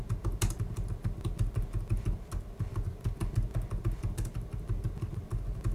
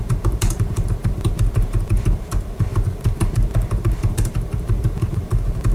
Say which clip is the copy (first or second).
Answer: second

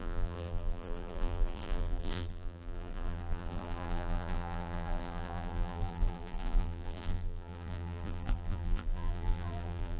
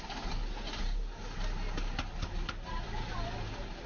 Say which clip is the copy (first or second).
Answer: first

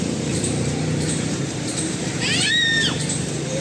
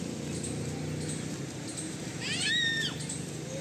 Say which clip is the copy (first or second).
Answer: first